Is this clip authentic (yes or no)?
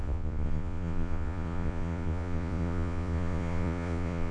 no